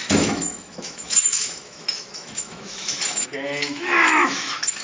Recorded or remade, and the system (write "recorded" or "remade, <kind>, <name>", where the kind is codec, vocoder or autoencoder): remade, autoencoder, DAC-VAE